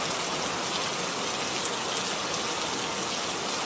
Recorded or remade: recorded